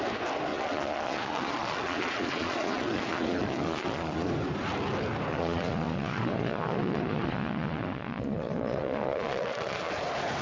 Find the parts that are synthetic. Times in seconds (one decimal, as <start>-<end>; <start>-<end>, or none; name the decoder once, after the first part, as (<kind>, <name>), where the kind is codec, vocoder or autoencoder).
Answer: 0.5-4.3 (vocoder, Vocos); 5.3-9.9